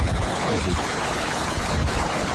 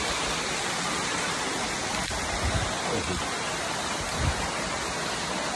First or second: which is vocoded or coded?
first